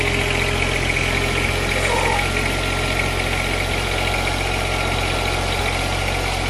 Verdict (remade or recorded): recorded